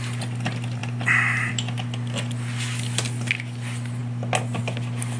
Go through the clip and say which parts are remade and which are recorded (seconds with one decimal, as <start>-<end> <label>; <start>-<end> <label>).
0.0-5.2 recorded